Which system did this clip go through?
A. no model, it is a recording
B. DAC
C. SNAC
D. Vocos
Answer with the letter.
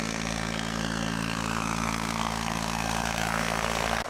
C